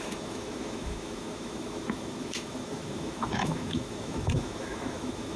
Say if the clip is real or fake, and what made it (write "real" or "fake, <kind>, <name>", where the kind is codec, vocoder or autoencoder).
fake, autoencoder, DAC-VAE